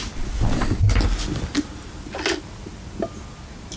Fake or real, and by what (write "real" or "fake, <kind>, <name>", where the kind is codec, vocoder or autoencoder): real